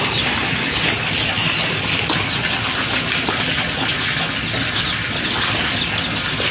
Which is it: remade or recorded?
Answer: recorded